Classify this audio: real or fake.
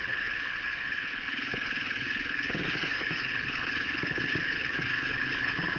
fake